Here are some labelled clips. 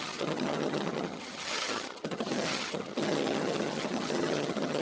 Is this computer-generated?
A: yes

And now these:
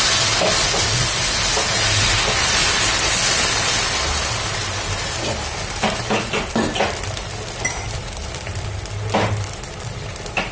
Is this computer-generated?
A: no